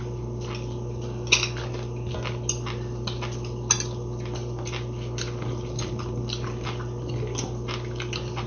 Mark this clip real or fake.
real